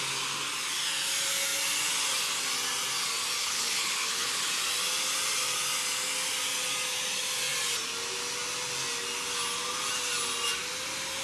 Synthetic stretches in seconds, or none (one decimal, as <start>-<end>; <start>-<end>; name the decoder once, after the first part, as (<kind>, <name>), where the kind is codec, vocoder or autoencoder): 3.4-4.5 (codec, HILCodec)